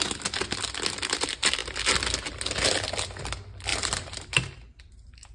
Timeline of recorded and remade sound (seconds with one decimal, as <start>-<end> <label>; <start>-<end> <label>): 0.0-3.7 recorded; 3.7-4.5 remade; 4.5-5.3 recorded